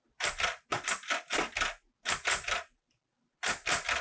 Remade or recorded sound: recorded